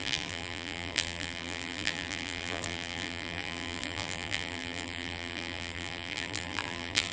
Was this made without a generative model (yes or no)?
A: no